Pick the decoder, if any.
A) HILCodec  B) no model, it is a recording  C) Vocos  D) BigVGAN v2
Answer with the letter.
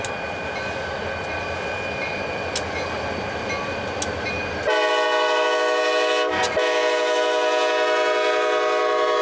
B